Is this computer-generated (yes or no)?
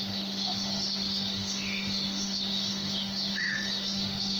yes